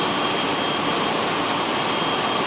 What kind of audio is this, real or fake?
real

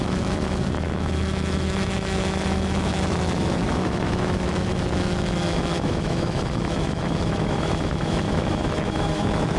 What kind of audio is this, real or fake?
fake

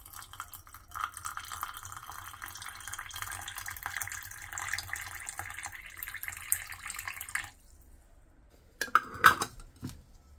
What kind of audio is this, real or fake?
real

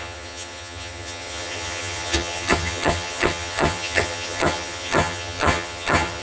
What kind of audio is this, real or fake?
fake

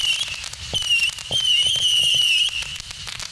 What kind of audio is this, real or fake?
real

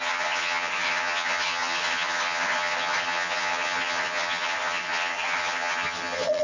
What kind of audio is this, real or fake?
fake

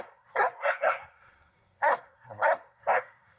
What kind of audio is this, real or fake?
fake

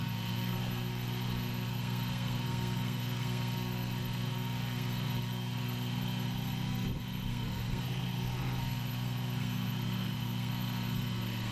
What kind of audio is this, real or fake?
fake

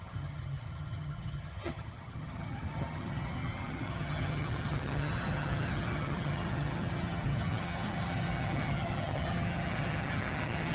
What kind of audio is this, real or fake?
fake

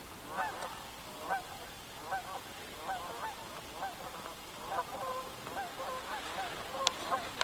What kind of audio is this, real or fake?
real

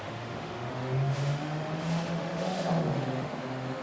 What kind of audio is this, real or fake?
fake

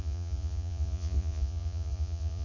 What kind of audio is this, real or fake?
fake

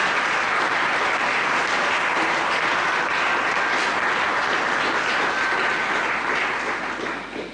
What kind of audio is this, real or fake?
real